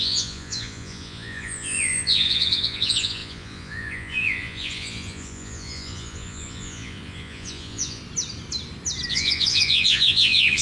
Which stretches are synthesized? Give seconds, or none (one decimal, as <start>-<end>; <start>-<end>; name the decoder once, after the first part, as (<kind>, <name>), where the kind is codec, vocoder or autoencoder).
0.0-8.0 (vocoder, Vocos); 9.1-10.6